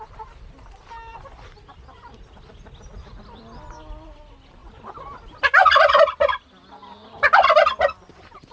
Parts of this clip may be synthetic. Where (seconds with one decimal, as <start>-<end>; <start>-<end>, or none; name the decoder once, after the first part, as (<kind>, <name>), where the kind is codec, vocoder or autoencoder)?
none